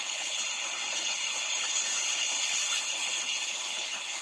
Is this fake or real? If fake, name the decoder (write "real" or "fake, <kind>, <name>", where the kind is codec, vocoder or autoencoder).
fake, codec, HILCodec